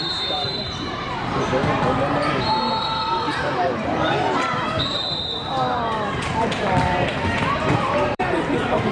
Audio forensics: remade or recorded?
remade